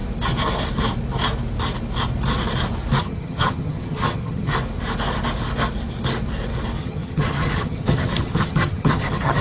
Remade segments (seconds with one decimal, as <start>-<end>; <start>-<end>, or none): 3.0-4.5; 6.8-9.4